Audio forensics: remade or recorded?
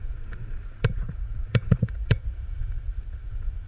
remade